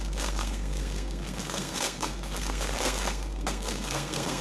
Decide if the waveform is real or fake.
fake